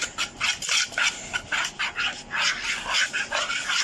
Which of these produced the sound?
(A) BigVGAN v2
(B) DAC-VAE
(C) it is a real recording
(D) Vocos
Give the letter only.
C